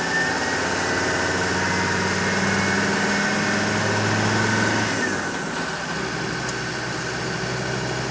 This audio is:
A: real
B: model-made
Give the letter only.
A